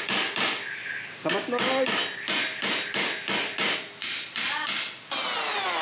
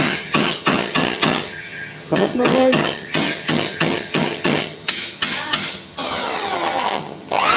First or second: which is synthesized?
second